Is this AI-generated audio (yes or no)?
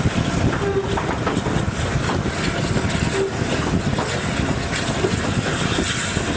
no